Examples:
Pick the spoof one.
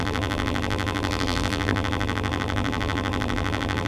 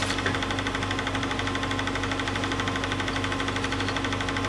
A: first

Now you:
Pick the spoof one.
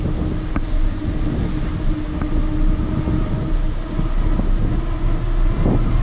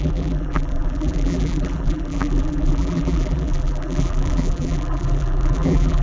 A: second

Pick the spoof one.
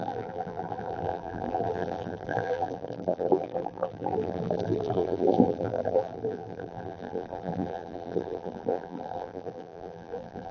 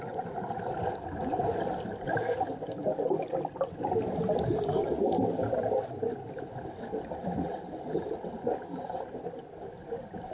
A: first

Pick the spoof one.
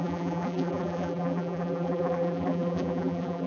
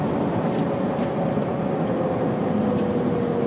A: first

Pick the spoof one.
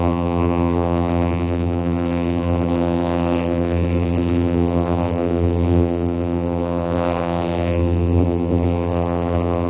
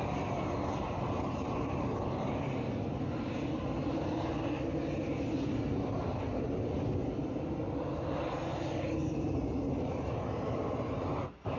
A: first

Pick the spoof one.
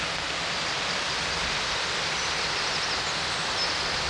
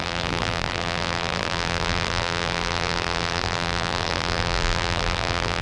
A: second